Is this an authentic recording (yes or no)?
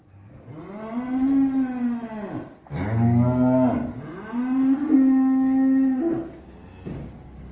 yes